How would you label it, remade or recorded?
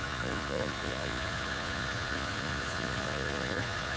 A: remade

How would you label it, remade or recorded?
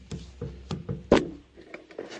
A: recorded